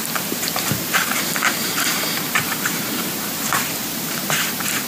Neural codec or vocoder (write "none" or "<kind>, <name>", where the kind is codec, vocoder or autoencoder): vocoder, BigVGAN v2